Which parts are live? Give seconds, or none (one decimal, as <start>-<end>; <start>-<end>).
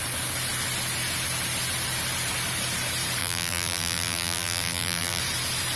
0.0-3.2; 5.2-5.8